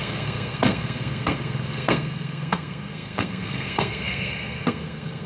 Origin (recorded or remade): remade